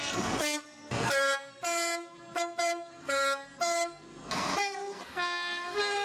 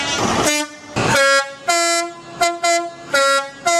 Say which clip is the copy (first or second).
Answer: first